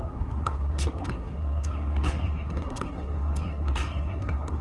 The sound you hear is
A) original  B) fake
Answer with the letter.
B